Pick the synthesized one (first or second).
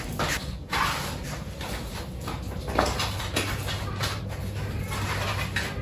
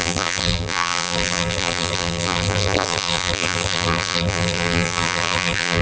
second